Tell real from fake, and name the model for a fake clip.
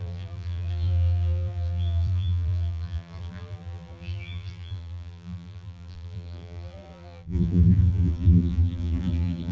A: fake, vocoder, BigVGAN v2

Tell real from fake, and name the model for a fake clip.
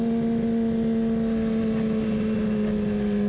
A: real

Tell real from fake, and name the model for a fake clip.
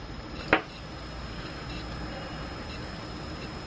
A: real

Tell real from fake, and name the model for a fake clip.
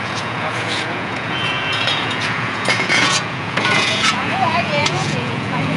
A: fake, vocoder, Vocos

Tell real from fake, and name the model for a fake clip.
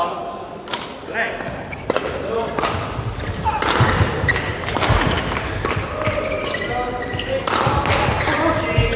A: real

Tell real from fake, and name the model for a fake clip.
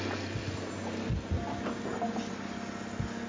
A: real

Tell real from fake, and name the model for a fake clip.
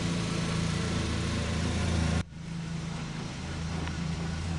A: fake, vocoder, BigVGAN v2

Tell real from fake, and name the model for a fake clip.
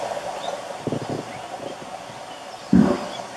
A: real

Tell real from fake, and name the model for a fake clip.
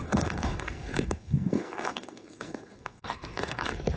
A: fake, codec, SNAC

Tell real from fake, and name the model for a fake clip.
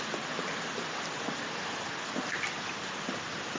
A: real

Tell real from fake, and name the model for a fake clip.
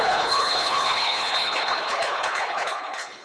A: fake, codec, HILCodec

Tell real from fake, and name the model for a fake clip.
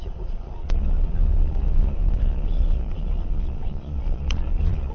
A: fake, vocoder, Vocos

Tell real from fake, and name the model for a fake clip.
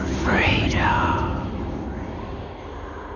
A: real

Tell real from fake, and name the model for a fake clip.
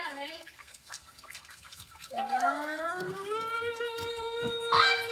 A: fake, codec, SNAC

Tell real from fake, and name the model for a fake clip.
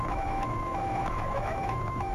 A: fake, autoencoder, DAC-VAE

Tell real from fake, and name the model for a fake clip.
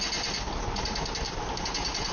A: real